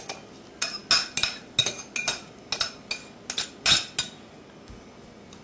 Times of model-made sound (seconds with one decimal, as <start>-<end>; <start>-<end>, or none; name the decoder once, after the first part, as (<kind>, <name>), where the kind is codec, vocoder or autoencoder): none

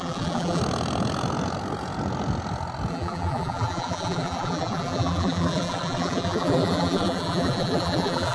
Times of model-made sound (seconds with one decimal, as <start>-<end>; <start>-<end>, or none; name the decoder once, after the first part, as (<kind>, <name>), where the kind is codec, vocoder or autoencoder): 0.0-0.6 (vocoder, BigVGAN v2); 2.9-8.3

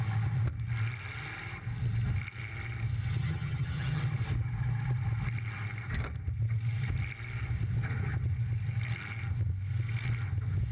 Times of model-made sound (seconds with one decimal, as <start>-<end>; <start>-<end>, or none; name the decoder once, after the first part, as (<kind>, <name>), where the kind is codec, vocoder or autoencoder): 3.2-4.0 (vocoder, HiFi-GAN)

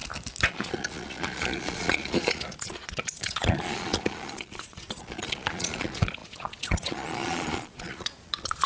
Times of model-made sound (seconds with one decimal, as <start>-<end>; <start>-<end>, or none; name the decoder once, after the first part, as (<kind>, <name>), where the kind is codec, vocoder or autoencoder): 0.5-8.7 (vocoder, Vocos)

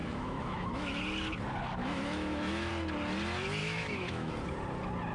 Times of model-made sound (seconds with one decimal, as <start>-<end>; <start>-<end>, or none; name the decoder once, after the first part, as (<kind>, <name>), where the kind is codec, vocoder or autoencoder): 0.0-1.0 (autoencoder, DAC-VAE); 1.8-2.7; 3.6-4.3

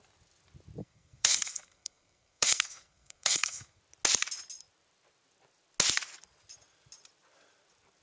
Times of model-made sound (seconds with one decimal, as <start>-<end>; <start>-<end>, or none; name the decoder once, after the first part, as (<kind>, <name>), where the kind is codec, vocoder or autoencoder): 0.8-3.8 (codec, SNAC)

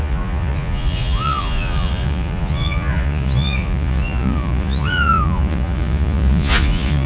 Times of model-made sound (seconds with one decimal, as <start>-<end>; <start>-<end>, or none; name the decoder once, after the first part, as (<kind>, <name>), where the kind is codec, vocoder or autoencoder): 0.0-7.1 (vocoder, Vocos)